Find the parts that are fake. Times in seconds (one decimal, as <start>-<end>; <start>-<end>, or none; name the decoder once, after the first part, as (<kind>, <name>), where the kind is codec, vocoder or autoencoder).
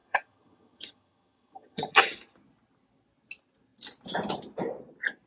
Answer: 0.0-2.0 (vocoder, HiFi-GAN)